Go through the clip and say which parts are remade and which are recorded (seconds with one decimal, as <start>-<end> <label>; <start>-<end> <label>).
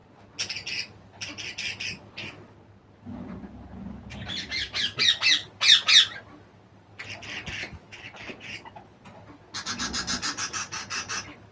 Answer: 0.0-11.5 recorded